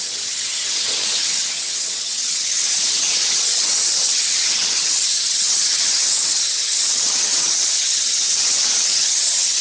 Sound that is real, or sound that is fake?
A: fake